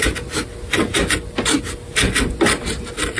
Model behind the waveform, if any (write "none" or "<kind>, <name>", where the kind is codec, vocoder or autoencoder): none